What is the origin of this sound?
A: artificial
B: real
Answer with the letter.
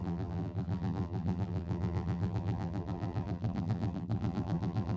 A